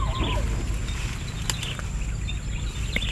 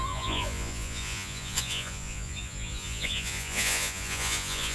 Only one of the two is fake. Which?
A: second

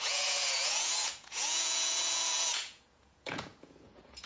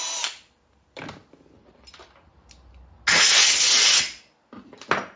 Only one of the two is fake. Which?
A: first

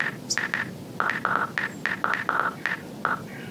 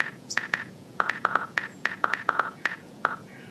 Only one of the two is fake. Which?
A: second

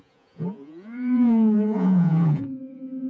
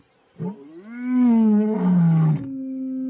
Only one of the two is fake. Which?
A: first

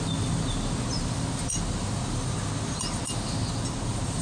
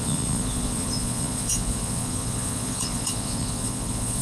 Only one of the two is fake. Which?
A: second